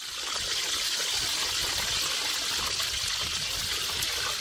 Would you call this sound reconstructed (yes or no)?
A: no